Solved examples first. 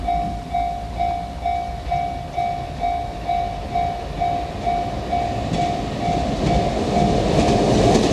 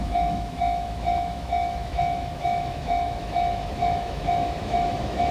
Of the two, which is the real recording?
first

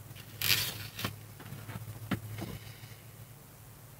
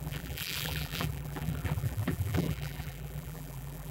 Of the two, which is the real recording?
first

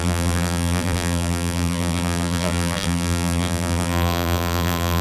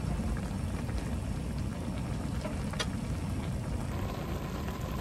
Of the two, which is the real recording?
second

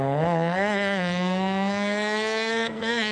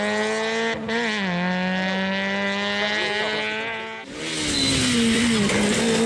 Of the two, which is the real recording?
second